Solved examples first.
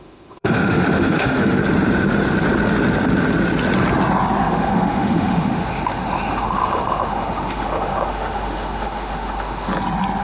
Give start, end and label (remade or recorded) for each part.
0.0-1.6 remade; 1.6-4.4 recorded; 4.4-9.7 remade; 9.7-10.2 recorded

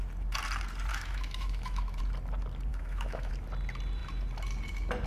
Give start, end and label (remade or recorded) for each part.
0.0-0.9 recorded; 0.9-2.0 remade; 2.0-2.7 recorded; 2.7-3.3 remade; 3.3-5.1 recorded